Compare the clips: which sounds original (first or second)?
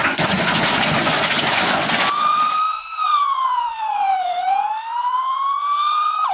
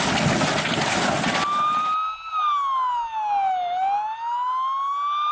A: second